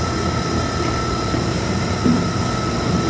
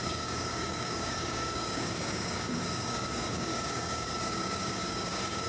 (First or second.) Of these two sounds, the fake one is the second